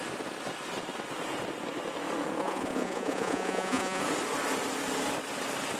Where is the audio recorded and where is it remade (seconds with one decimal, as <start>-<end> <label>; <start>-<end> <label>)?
0.0-2.4 recorded; 2.4-4.0 remade; 4.0-5.8 recorded